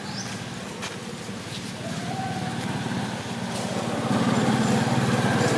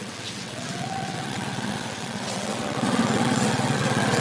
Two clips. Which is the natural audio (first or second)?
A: first